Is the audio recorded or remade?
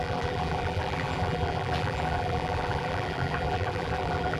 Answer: remade